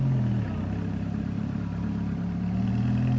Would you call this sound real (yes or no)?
yes